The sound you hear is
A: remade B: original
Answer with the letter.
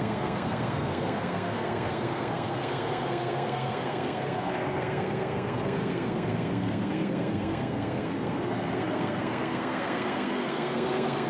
A